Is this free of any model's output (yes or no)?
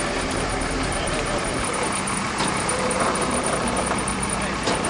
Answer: no